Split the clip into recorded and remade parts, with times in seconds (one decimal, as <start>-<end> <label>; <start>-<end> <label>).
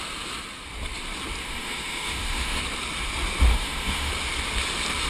0.0-1.4 recorded; 1.4-2.6 remade; 2.6-3.5 recorded; 3.5-4.1 remade; 4.1-5.1 recorded